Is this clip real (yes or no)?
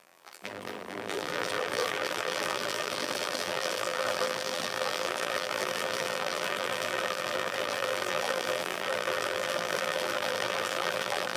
no